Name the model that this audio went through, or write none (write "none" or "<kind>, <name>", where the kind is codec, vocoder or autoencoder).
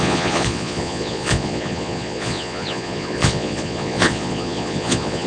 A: vocoder, Vocos